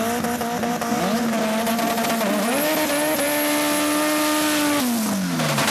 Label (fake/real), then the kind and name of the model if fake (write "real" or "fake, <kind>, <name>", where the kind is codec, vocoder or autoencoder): real